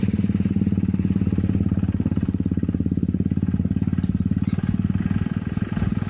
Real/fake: real